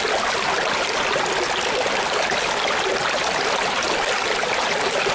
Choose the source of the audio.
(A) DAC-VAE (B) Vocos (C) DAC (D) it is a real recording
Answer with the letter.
D